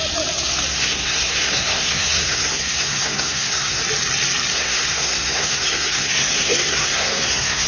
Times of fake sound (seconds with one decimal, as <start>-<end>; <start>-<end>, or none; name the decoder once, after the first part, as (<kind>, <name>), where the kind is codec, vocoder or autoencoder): 0.7-3.8 (codec, SNAC); 4.5-7.7